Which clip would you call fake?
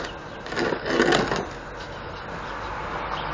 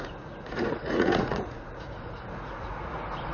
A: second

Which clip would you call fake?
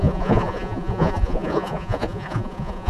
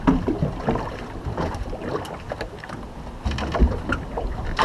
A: first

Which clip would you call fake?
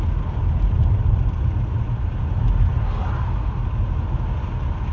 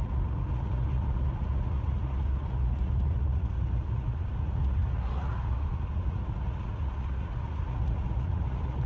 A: second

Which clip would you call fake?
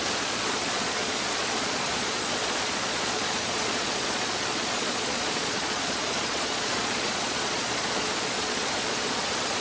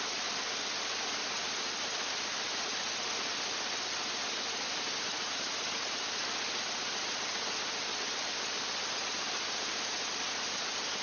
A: first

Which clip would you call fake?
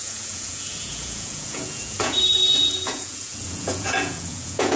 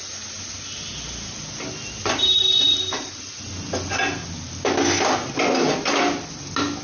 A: first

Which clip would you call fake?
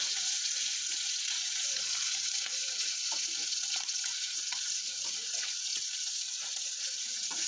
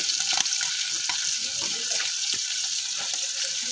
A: first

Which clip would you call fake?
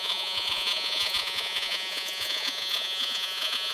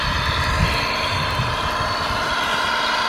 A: first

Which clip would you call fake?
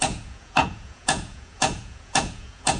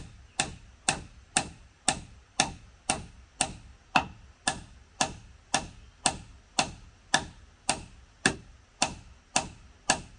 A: first